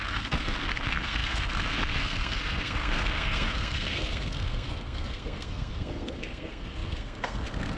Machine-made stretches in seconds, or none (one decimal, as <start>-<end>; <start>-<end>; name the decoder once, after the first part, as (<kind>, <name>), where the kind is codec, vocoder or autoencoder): 0.0-7.8 (codec, SNAC)